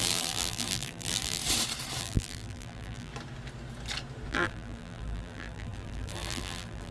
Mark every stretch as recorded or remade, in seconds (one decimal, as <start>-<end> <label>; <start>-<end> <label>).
0.0-1.4 remade; 1.4-2.0 recorded; 2.0-3.1 remade; 3.1-4.3 recorded; 4.3-6.9 remade